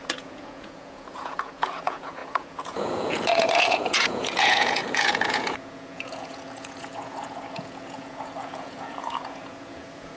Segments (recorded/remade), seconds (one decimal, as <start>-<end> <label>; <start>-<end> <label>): 0.0-10.2 remade